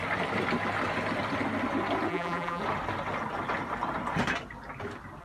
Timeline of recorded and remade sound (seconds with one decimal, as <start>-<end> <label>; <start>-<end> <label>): 0.0-2.1 recorded; 2.1-2.6 remade; 2.6-5.2 recorded